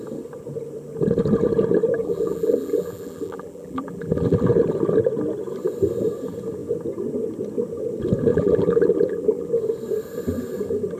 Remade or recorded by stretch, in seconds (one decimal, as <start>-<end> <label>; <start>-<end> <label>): 0.0-2.0 recorded; 2.0-4.5 remade; 4.5-8.3 recorded; 8.3-9.5 remade; 9.5-11.0 recorded